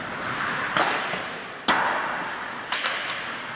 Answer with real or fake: real